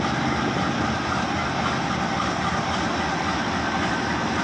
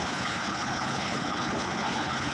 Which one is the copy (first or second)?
second